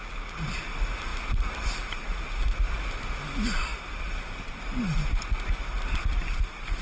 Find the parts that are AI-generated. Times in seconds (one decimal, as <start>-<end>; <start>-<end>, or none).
none